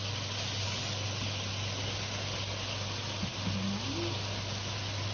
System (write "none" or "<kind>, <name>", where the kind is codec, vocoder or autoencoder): none